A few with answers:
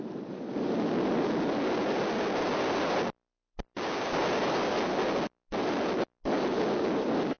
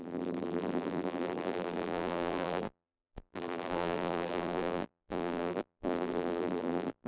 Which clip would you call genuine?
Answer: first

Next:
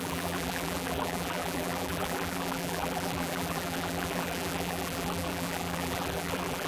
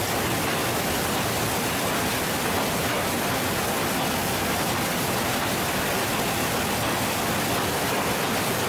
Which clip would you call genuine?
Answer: second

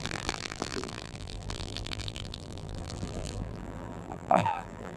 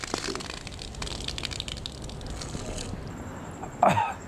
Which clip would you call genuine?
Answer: second